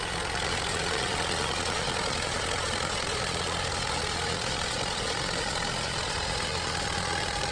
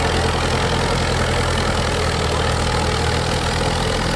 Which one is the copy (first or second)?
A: first